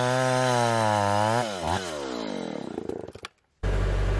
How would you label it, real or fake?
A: real